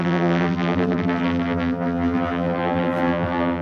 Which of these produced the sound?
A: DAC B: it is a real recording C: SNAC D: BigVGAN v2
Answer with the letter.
D